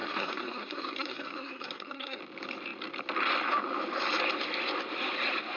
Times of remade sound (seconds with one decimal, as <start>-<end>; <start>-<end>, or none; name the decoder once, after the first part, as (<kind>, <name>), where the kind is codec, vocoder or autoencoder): 0.0-2.2 (codec, SNAC)